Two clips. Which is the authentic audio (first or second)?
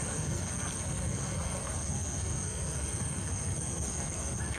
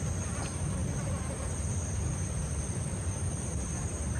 second